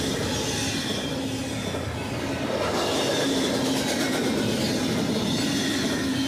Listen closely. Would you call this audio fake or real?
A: real